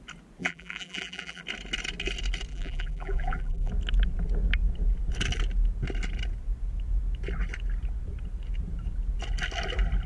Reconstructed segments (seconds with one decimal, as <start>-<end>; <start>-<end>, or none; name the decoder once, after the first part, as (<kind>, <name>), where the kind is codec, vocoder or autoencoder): 0.4-1.4 (vocoder, BigVGAN v2); 2.5-3.7